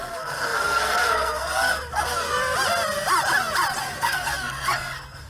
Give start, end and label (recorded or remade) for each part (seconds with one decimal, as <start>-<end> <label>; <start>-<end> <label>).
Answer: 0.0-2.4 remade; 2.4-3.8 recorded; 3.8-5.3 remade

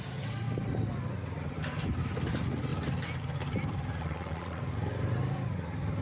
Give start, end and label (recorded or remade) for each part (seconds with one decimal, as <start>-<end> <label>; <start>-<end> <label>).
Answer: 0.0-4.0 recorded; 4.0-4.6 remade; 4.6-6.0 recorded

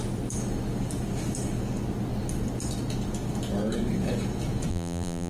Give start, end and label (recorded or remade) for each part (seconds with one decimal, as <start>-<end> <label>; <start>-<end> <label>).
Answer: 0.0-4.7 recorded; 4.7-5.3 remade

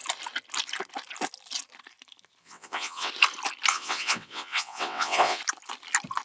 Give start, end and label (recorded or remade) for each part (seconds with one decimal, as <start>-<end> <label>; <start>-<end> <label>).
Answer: 0.0-2.4 recorded; 2.4-3.1 remade; 3.1-3.7 recorded; 3.7-5.4 remade; 5.4-6.2 recorded

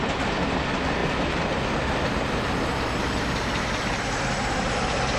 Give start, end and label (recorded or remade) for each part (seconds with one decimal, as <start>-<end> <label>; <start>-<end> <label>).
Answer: 0.0-5.2 recorded